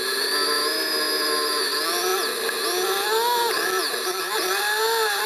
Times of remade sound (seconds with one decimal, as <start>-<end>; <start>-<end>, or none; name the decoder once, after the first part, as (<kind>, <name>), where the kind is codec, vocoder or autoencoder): none